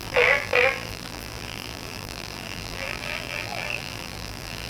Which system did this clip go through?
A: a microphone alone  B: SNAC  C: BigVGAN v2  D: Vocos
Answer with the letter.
C